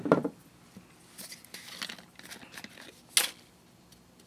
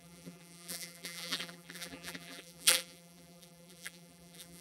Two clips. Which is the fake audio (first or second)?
second